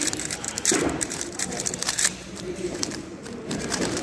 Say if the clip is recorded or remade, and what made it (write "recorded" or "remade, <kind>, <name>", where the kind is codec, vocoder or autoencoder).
remade, vocoder, BigVGAN v2